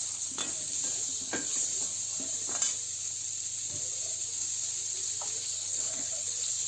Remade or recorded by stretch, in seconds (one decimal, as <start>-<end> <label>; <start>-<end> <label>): 0.0-0.4 remade; 0.4-1.0 recorded; 1.0-1.7 remade; 1.7-5.4 recorded; 5.4-6.7 remade